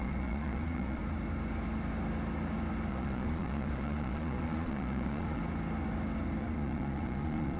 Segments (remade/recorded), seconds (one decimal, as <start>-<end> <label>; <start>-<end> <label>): 0.0-1.0 remade; 1.0-2.9 recorded; 2.9-5.4 remade; 5.4-6.4 recorded; 6.4-7.6 remade